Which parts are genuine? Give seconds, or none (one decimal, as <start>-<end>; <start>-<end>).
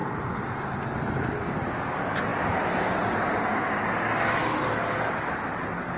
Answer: 0.0-6.0